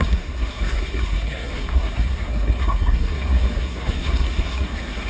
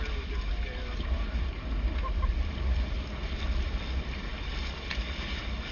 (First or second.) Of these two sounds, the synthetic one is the first